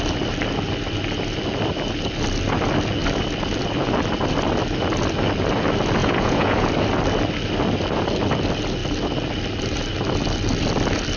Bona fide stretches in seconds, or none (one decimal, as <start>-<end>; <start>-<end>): 0.0-6.0; 6.7-11.2